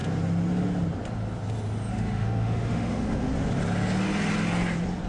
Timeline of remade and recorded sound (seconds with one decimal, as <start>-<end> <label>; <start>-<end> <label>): 0.0-1.9 recorded; 1.9-3.3 remade; 3.3-5.1 recorded